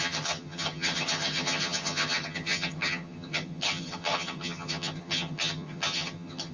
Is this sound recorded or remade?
remade